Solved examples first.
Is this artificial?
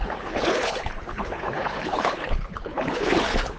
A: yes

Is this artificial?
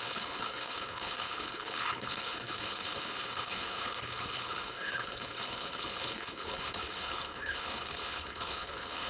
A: yes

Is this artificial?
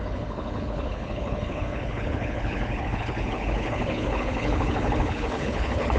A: yes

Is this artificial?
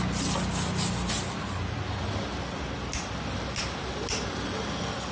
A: no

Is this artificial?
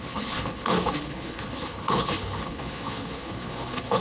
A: yes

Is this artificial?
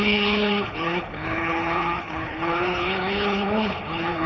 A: yes